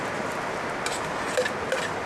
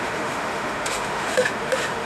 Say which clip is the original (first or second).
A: first